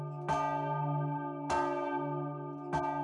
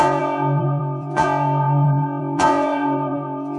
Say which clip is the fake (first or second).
second